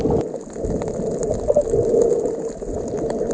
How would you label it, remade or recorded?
recorded